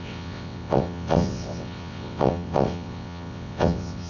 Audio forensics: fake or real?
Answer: fake